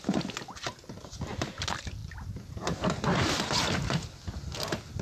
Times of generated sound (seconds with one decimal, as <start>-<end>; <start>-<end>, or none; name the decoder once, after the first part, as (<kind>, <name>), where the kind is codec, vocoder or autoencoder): none